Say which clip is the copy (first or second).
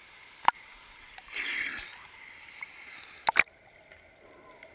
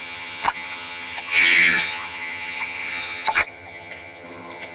second